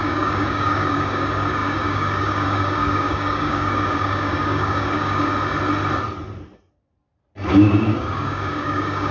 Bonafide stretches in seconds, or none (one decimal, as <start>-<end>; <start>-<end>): 5.3-7.5